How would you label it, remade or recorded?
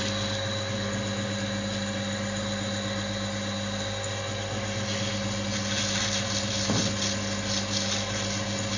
recorded